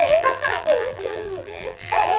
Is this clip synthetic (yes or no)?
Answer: yes